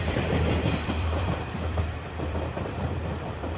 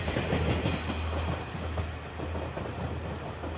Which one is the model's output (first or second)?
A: first